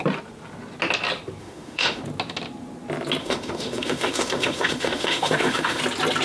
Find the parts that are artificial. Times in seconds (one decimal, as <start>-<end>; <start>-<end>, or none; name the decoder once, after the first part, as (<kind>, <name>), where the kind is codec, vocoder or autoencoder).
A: 1.4-2.0 (autoencoder, DAC-VAE); 3.2-5.8